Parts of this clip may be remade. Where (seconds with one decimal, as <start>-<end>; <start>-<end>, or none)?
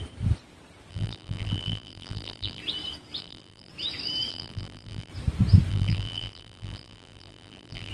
0.9-2.6; 3.2-3.7; 4.3-5.1; 5.7-7.9